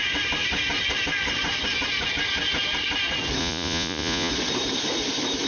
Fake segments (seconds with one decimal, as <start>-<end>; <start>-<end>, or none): 3.4-4.3